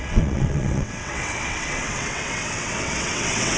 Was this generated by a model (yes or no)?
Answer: yes